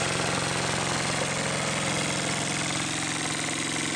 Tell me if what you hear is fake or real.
real